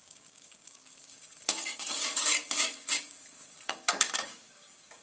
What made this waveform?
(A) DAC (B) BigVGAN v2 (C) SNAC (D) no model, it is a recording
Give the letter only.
A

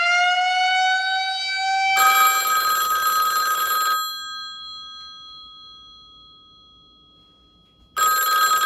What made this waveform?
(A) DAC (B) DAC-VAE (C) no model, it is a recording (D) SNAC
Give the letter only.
C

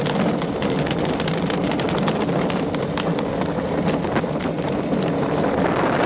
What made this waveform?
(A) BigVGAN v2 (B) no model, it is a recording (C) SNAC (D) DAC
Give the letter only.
B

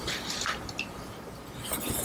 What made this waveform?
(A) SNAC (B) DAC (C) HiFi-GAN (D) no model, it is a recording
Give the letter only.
D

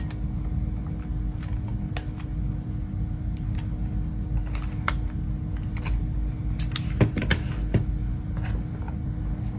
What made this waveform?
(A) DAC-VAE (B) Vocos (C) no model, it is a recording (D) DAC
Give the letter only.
C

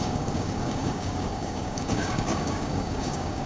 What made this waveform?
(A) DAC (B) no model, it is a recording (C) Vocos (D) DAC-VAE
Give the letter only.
A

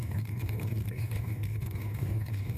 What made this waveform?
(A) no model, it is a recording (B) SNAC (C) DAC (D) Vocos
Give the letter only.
C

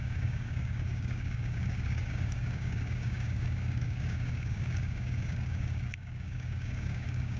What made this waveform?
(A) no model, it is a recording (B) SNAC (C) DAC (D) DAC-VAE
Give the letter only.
C